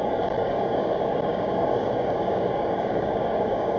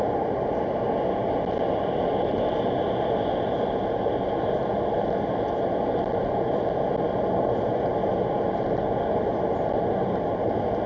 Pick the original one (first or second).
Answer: second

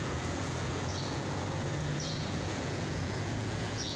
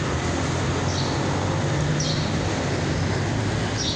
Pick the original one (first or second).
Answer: second